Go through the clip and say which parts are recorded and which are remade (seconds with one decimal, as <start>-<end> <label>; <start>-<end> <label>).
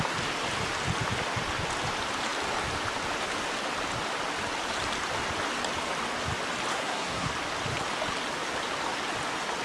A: 0.0-6.7 recorded; 6.7-7.3 remade; 7.3-9.6 recorded